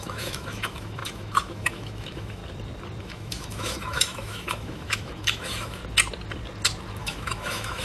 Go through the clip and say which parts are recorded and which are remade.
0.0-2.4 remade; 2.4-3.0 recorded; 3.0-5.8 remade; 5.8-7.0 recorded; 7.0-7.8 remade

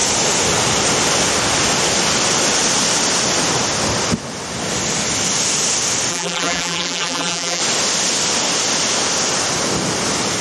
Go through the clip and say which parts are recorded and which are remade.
0.0-6.1 recorded; 6.1-7.6 remade; 7.6-10.4 recorded

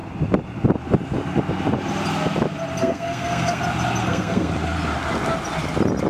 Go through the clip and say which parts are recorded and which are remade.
0.0-2.8 recorded; 2.8-3.6 remade; 3.6-4.0 recorded; 4.0-4.5 remade; 4.5-6.1 recorded

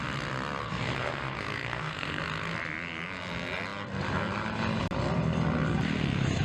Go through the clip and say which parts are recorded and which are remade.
0.0-0.6 recorded; 0.6-2.2 remade; 2.2-6.4 recorded

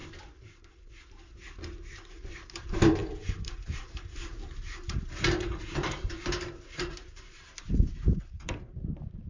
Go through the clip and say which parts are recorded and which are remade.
0.0-2.1 recorded; 2.1-9.3 remade